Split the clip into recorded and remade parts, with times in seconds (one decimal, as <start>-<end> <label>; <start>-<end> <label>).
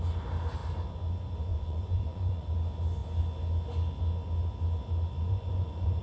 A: 0.0-1.5 recorded; 1.5-2.5 remade; 2.5-5.2 recorded; 5.2-6.0 remade